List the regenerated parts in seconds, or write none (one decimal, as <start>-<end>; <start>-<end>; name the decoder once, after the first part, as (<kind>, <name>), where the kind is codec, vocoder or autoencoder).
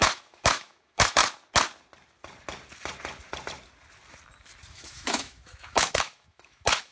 0.0-1.2 (autoencoder, DAC-VAE); 4.7-6.9